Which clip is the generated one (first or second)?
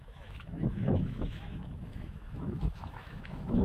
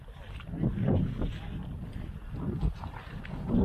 first